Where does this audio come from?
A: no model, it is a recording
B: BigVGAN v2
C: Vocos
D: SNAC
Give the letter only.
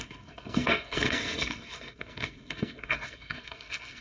D